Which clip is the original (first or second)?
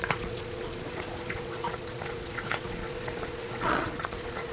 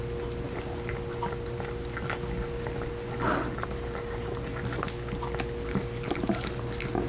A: second